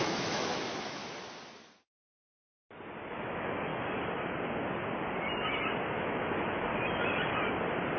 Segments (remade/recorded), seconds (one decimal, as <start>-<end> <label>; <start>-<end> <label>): 0.0-1.0 remade; 1.0-3.1 recorded; 3.1-3.7 remade; 3.7-6.0 recorded; 6.0-6.7 remade; 6.7-8.0 recorded